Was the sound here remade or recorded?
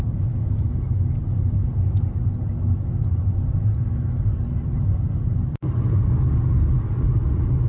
recorded